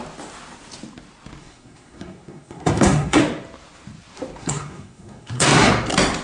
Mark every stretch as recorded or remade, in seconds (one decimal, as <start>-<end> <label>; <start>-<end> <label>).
0.0-1.4 recorded; 1.4-3.2 remade; 3.2-4.4 recorded; 4.4-5.7 remade; 5.7-6.2 recorded